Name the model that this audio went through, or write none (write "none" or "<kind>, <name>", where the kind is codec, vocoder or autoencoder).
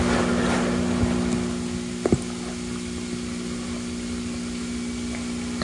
none